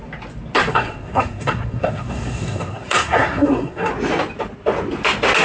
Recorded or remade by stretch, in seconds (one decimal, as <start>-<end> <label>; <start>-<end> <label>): 0.0-0.7 recorded; 0.7-3.9 remade; 3.9-5.4 recorded